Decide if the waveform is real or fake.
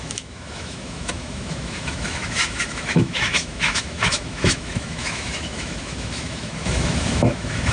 fake